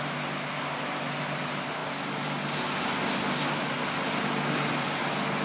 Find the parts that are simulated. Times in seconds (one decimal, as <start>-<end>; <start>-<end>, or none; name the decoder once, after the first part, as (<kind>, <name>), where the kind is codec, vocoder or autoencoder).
none